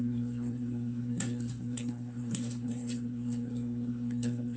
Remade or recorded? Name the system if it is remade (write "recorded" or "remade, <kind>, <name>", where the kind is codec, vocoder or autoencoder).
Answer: remade, codec, SNAC